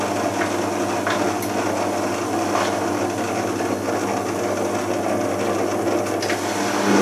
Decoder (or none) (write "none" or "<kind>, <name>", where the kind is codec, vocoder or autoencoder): none